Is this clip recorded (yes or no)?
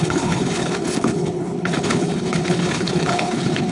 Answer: no